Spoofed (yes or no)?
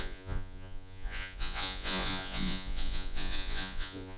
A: yes